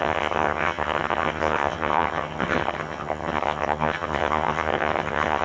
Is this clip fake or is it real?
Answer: fake